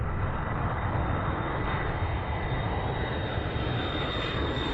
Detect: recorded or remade recorded